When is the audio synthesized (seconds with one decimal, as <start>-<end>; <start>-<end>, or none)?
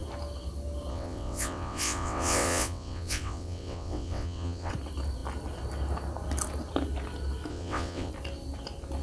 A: 0.9-4.7; 7.5-8.1